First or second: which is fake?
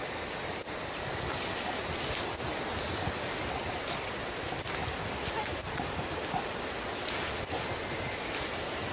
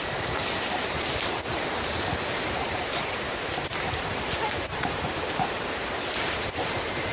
second